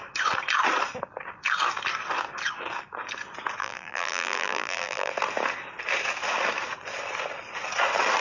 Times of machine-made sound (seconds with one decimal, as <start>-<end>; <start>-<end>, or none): 3.6-5.1

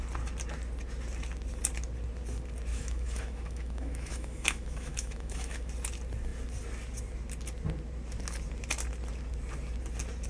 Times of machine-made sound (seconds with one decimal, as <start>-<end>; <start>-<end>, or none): 2.7-5.7

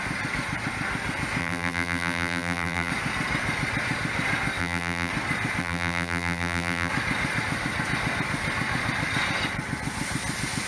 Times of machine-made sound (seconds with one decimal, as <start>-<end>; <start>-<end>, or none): 1.4-2.9; 4.6-5.1; 5.6-6.9

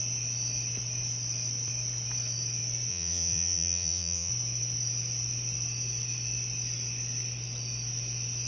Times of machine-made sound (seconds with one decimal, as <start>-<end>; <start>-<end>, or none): 2.9-4.3

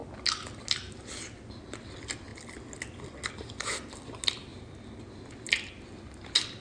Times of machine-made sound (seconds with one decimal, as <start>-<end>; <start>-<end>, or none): none

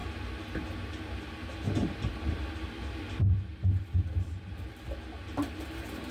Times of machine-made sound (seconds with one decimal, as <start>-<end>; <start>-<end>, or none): 3.5-5.4

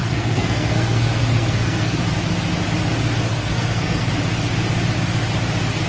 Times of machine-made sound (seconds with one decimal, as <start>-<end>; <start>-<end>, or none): 0.0-2.0; 3.3-4.1

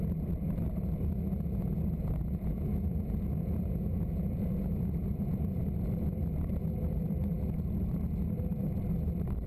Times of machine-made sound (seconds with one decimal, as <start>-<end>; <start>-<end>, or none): 1.6-5.6